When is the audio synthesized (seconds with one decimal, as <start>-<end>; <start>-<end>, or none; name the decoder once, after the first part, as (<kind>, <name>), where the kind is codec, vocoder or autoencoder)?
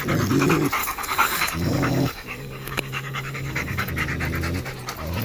0.8-3.9 (codec, DAC)